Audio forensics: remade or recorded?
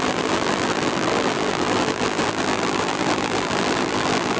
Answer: remade